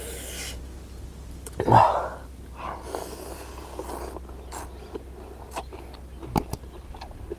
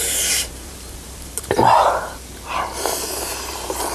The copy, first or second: second